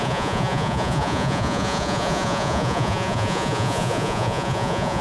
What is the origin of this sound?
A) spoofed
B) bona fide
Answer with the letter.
A